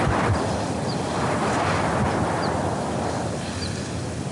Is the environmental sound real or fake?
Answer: real